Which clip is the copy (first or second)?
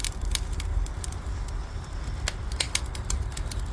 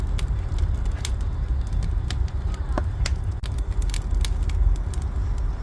first